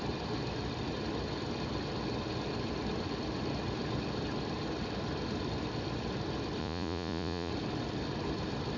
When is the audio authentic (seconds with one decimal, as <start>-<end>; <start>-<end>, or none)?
0.0-6.6; 7.5-8.8